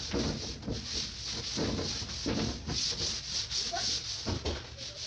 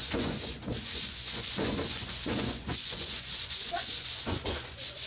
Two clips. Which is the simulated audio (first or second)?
second